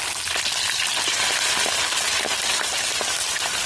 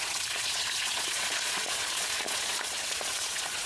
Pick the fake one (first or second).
second